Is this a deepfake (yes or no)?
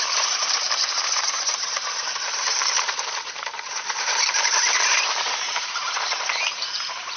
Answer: yes